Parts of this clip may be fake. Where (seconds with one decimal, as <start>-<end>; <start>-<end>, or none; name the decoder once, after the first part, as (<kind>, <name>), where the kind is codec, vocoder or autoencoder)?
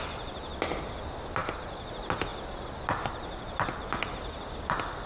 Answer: none